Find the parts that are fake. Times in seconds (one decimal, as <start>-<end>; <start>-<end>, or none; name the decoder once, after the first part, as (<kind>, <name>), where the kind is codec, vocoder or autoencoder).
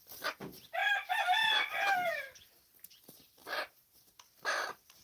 none